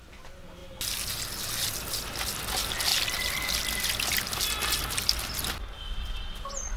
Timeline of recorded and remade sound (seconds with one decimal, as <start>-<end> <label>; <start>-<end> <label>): 0.0-6.8 recorded